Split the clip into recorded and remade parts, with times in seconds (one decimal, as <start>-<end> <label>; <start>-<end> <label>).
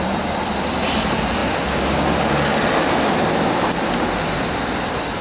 0.0-1.4 remade; 1.4-4.5 recorded; 4.5-5.2 remade